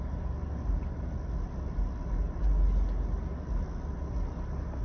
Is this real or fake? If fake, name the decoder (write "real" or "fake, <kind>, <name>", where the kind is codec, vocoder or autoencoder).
real